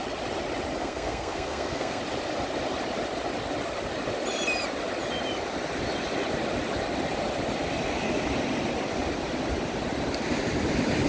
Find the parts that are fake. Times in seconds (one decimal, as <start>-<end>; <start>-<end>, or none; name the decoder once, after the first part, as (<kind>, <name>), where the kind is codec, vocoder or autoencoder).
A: 0.8-2.0 (codec, SNAC)